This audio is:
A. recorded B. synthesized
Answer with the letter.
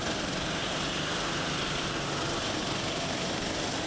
A